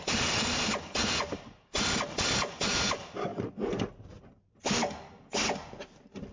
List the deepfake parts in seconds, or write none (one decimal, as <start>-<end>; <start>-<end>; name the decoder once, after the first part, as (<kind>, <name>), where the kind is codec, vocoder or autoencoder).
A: none